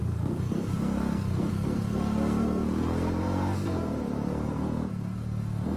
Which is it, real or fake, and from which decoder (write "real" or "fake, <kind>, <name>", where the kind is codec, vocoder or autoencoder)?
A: fake, codec, SNAC